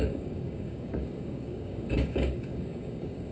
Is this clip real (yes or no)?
no